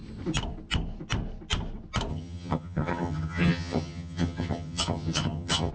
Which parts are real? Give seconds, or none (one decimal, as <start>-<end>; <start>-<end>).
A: 0.0-2.1